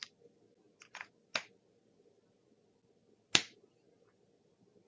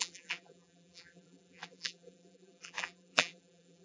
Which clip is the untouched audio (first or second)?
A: first